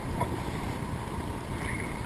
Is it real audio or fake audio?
real